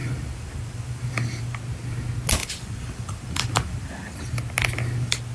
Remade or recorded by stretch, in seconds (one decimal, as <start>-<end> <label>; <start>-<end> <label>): 0.0-1.6 remade; 1.6-2.4 recorded; 2.4-4.2 remade; 4.2-5.3 recorded